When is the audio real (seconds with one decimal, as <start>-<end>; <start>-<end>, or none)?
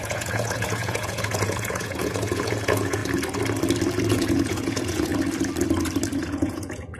3.0-4.1; 5.1-6.2